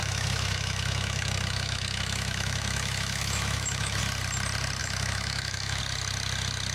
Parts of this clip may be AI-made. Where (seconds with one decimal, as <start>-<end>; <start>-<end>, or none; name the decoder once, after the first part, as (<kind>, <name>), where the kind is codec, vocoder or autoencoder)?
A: 0.0-4.0 (autoencoder, DAC-VAE); 4.8-5.8